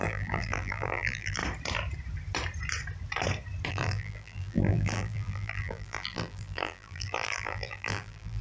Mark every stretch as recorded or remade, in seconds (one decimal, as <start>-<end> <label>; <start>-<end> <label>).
0.0-1.4 remade; 1.4-3.7 recorded; 3.7-8.4 remade